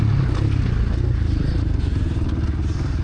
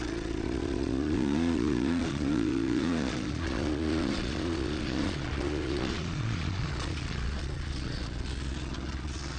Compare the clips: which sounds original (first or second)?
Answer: first